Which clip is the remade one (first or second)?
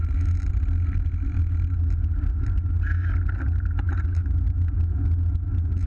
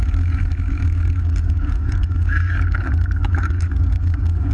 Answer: second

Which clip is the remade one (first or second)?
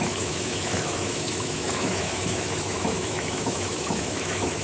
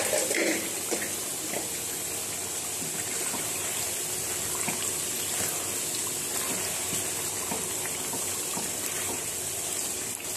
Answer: first